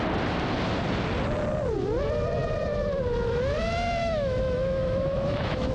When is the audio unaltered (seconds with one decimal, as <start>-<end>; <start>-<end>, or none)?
0.0-4.0